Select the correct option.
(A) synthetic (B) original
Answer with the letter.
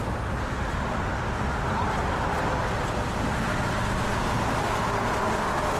B